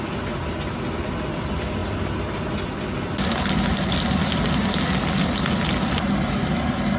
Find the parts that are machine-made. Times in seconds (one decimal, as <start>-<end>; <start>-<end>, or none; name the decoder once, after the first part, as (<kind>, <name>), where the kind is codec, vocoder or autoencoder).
none